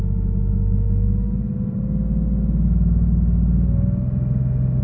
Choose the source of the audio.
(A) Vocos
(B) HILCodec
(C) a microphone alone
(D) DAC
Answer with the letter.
C